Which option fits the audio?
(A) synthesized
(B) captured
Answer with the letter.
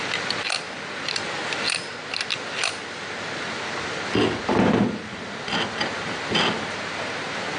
B